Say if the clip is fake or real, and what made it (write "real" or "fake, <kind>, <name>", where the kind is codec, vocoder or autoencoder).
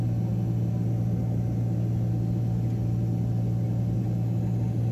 real